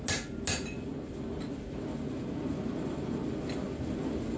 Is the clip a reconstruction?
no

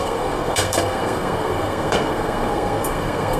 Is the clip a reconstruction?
yes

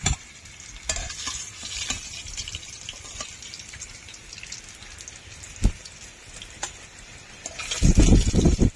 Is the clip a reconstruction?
no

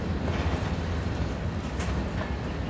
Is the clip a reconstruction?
no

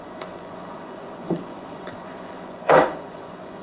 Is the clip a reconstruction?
yes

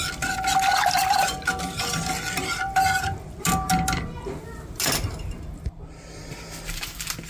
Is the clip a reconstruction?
no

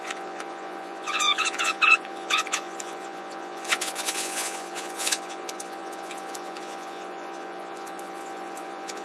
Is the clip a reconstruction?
yes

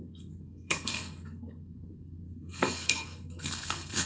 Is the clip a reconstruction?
yes